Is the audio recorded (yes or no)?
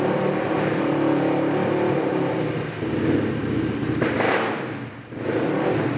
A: yes